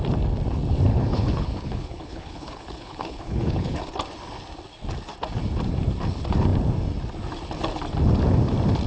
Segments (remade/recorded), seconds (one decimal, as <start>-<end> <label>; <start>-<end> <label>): 0.0-0.9 recorded; 0.9-3.8 remade; 3.8-8.9 recorded

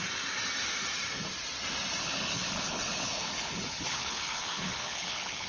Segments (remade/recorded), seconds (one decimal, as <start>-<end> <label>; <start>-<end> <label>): 0.0-2.0 recorded; 2.0-5.5 remade

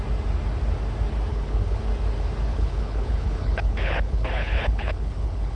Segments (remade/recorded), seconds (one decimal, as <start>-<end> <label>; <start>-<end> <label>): 0.0-1.3 recorded; 1.3-1.8 remade; 1.8-2.5 recorded; 2.5-5.6 remade

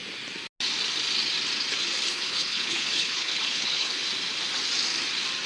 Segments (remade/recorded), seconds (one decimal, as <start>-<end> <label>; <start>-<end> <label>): 0.0-2.1 recorded; 2.1-4.0 remade; 4.0-5.5 recorded

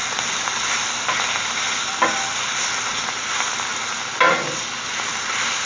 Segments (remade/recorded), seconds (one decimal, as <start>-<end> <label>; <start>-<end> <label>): 0.0-5.7 recorded